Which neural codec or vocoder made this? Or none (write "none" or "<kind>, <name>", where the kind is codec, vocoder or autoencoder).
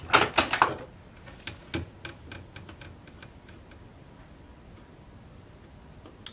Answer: none